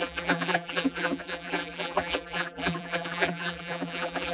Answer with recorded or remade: remade